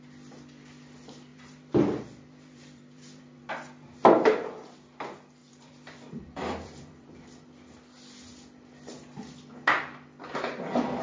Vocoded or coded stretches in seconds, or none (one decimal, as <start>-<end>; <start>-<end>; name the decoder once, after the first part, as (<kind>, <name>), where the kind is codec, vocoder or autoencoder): 1.3-3.5 (vocoder, BigVGAN v2); 5.4-7.2